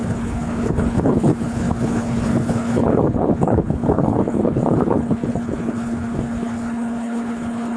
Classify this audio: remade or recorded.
remade